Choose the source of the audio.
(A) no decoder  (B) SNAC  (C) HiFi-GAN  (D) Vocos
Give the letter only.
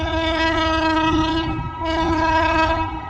C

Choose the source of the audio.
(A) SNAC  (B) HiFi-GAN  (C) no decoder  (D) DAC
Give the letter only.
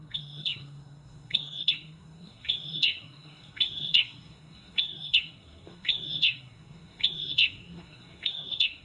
A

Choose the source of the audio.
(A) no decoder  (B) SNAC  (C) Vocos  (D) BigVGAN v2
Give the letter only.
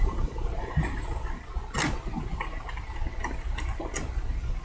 A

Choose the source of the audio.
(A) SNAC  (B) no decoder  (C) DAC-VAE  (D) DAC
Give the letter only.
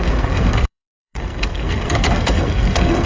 A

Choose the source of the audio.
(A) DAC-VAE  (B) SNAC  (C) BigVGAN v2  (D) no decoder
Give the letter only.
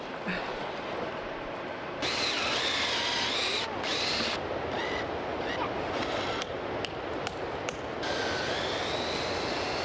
D